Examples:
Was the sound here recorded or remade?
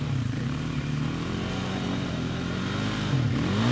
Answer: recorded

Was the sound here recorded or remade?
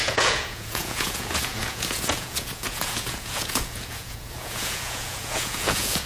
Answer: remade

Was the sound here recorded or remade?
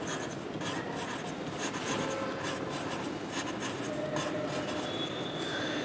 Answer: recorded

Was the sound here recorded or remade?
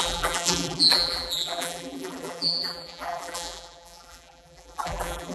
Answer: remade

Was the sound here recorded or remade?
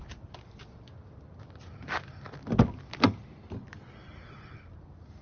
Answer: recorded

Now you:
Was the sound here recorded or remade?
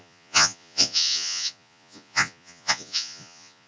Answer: remade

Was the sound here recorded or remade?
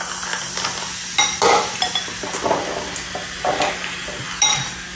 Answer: recorded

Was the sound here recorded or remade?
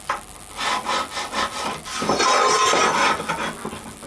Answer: recorded